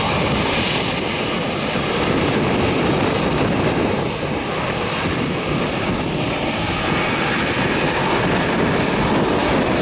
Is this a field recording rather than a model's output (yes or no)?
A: yes